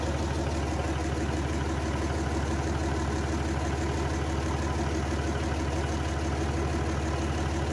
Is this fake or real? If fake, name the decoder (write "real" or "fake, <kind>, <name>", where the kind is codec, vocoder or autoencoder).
real